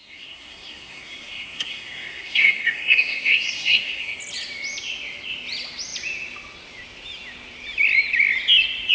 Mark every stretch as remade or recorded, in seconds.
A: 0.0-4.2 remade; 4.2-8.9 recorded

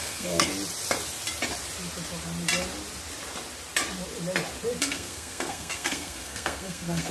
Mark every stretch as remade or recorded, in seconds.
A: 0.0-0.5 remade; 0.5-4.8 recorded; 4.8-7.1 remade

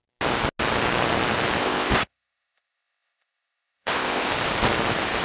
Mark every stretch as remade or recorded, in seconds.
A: 0.0-1.6 recorded; 1.6-4.3 remade; 4.3-5.2 recorded